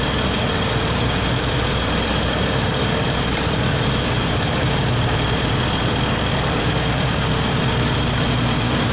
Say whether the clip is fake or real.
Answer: fake